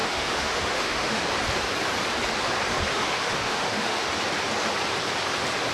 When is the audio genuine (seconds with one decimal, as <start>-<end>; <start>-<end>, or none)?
1.2-2.9; 4.1-5.7